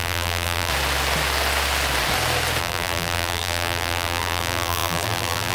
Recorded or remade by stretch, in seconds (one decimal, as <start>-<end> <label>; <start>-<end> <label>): 0.0-0.7 remade; 0.7-2.6 recorded; 2.6-5.5 remade